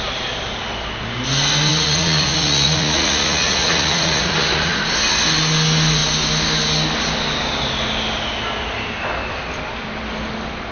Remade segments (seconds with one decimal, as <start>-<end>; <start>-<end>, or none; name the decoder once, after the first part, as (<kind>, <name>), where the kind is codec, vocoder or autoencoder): 1.7-4.8 (vocoder, Vocos)